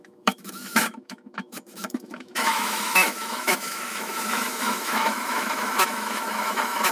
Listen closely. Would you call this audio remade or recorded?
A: remade